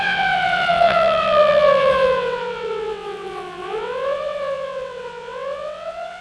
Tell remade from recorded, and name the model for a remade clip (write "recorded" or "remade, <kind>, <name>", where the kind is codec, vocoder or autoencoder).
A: remade, vocoder, WaveNeXt